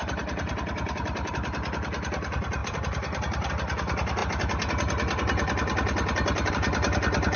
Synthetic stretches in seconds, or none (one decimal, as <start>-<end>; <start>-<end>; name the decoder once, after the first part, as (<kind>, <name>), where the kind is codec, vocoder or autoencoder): 0.0-1.3 (vocoder, BigVGAN v2); 2.6-3.5